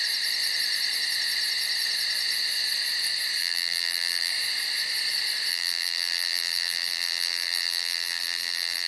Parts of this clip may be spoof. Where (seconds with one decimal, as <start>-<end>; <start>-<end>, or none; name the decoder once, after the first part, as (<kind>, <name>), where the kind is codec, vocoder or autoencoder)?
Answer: 3.4-4.3 (vocoder, BigVGAN v2); 5.5-8.9